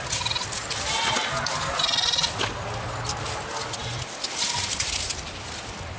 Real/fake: real